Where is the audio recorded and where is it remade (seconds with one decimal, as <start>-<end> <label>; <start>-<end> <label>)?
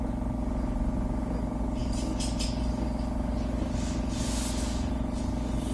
0.0-5.7 recorded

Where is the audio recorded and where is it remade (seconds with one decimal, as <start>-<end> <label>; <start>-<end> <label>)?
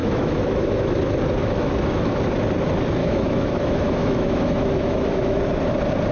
0.0-1.0 remade; 1.0-1.4 recorded; 1.4-2.1 remade; 2.1-3.0 recorded; 3.0-5.4 remade; 5.4-6.1 recorded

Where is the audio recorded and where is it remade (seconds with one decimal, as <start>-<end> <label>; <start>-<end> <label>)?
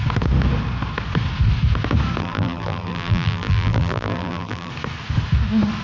0.0-2.2 recorded; 2.2-4.7 remade; 4.7-5.8 recorded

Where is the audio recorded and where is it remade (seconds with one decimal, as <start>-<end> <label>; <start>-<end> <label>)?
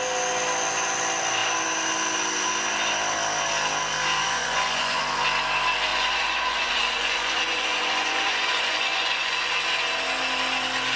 0.0-4.2 recorded; 4.2-5.0 remade; 5.0-5.9 recorded; 5.9-9.5 remade; 9.5-11.0 recorded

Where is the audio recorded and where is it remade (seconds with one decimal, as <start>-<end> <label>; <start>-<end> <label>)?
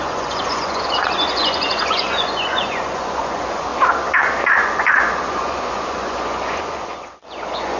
0.0-3.7 remade; 3.7-4.5 recorded; 4.5-7.8 remade